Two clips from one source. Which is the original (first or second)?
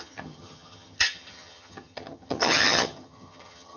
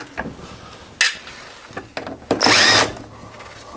second